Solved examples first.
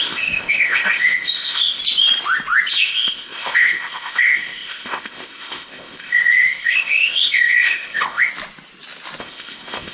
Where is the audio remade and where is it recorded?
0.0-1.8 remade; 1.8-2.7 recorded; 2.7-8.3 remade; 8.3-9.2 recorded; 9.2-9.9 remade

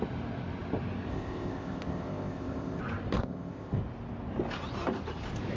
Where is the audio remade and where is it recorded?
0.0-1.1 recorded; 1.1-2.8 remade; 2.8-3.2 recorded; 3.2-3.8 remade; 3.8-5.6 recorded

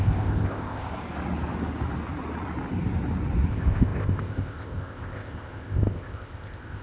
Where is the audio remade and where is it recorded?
0.0-0.9 remade; 0.9-3.5 recorded; 3.5-6.8 remade